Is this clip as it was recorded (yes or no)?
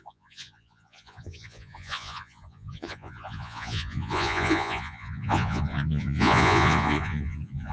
no